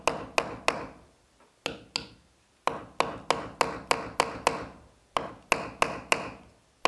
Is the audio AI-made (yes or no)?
no